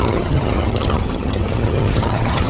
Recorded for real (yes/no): no